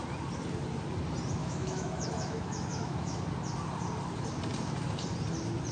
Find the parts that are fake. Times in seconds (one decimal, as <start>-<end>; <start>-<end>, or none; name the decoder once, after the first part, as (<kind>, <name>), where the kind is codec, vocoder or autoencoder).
1.4-3.2 (autoencoder, DAC-VAE)